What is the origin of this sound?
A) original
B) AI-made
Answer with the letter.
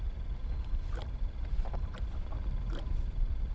A